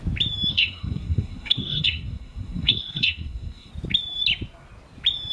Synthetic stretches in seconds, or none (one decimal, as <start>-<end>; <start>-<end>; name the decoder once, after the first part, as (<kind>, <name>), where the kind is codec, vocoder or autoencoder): 0.5-3.7 (codec, SNAC)